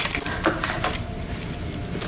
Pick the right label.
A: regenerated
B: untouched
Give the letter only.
B